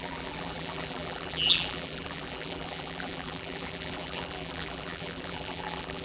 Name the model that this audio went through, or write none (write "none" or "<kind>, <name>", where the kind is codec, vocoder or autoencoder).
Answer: vocoder, BigVGAN v2